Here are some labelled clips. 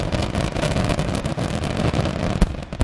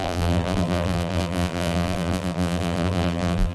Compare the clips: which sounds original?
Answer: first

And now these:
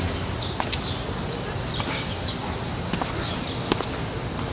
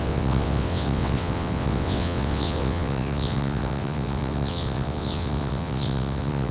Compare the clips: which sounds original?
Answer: first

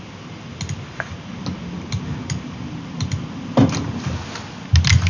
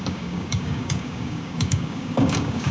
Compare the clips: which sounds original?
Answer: first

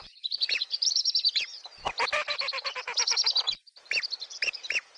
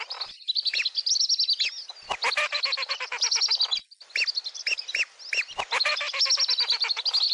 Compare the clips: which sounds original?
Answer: second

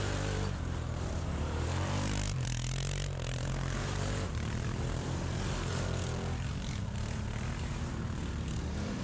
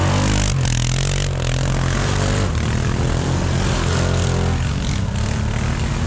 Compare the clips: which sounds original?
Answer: second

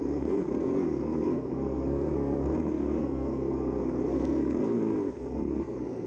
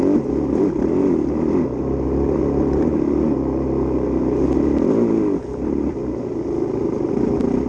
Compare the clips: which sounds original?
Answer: second